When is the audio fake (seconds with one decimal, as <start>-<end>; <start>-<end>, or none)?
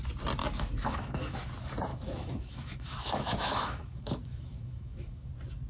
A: 0.4-1.5; 1.9-5.3